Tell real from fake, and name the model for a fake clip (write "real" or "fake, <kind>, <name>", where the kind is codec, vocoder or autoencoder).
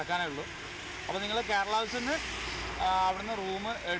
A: real